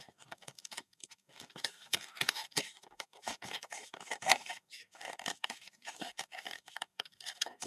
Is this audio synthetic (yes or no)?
yes